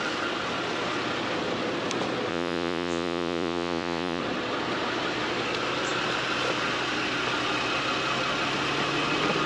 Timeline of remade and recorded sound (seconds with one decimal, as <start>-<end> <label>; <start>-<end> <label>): 0.0-2.3 recorded; 2.3-4.2 remade; 4.2-9.5 recorded